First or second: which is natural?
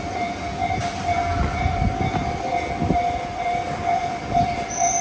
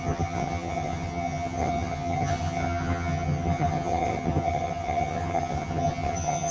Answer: first